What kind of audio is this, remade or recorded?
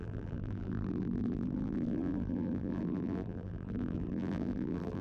remade